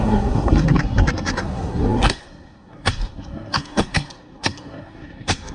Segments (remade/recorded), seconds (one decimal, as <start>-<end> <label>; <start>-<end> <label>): 0.0-5.5 remade